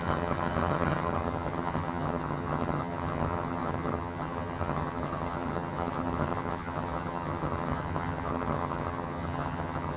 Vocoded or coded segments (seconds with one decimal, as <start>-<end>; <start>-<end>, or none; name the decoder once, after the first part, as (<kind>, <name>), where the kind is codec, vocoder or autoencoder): 0.0-10.0 (vocoder, HiFi-GAN)